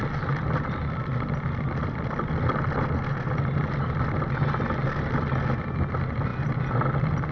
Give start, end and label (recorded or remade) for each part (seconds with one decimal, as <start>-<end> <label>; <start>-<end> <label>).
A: 0.0-7.3 recorded